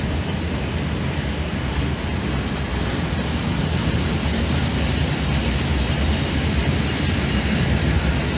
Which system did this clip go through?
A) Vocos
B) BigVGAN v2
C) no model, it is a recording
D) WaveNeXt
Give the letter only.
C